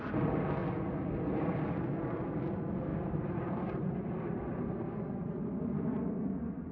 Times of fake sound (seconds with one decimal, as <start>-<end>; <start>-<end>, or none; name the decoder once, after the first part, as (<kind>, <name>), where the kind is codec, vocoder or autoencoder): 2.9-4.1 (vocoder, BigVGAN v2)

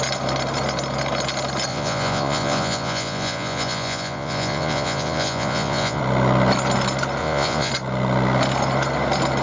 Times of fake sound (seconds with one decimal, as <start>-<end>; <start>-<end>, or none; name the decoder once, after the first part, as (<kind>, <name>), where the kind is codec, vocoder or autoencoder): 1.7-6.0 (vocoder, Vocos); 7.2-7.7

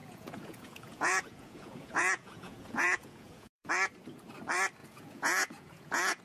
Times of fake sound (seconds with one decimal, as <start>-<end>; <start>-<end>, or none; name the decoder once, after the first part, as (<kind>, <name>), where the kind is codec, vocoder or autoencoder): 0.0-3.7 (vocoder, Vocos); 4.8-6.2

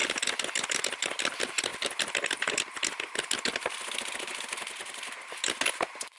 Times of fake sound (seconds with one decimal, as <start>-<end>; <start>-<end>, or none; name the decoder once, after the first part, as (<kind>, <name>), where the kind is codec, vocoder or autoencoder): none

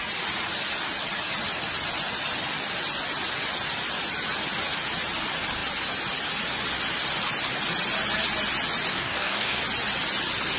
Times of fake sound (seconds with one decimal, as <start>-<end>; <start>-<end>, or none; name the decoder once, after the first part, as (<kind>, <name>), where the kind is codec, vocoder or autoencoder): 8.9-9.6 (codec, DAC)

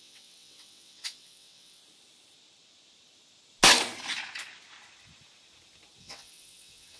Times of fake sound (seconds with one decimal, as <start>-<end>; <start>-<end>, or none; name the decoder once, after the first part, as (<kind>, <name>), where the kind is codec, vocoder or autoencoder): 0.0-1.8 (vocoder, WaveNeXt); 6.0-7.0

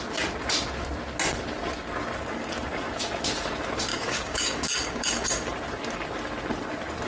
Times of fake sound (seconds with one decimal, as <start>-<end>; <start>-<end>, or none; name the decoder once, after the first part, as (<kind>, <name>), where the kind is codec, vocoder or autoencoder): 3.9-5.5 (codec, DAC)

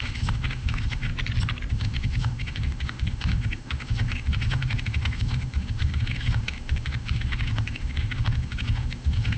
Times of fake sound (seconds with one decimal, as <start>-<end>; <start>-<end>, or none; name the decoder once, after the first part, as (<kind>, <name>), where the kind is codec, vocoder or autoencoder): 0.0-1.1 (autoencoder, DAC-VAE); 1.7-9.4